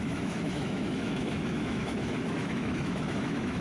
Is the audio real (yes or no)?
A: no